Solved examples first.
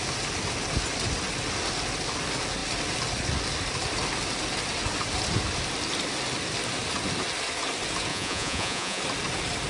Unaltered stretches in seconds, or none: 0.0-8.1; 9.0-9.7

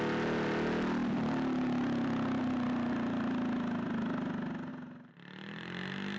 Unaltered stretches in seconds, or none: 0.0-6.2

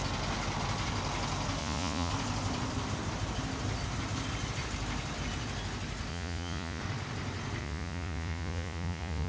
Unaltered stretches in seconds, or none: 0.0-1.6; 2.1-6.1; 6.8-7.6